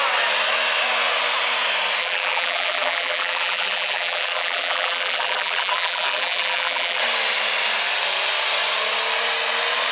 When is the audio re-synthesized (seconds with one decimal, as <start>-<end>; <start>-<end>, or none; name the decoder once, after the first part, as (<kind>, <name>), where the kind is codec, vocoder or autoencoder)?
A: 2.0-7.0 (vocoder, BigVGAN v2)